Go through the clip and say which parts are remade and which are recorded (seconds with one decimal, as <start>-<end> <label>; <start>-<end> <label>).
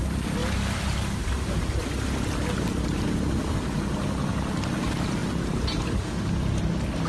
0.0-7.1 recorded